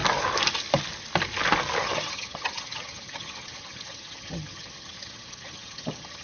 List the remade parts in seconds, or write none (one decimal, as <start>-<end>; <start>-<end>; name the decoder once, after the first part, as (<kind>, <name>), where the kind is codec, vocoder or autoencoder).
1.8-6.2 (vocoder, HiFi-GAN)